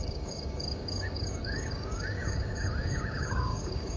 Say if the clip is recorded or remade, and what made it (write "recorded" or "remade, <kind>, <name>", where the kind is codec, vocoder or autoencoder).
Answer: remade, codec, DAC